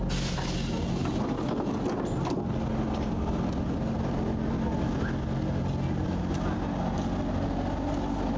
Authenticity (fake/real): real